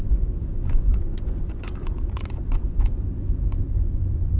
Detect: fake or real fake